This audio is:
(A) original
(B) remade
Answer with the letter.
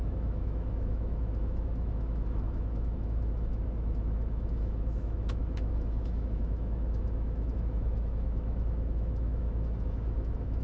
B